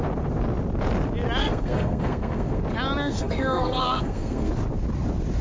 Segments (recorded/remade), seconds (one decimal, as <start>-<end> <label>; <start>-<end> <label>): 0.0-1.4 recorded; 1.4-2.6 remade; 2.6-3.0 recorded; 3.0-4.5 remade; 4.5-5.4 recorded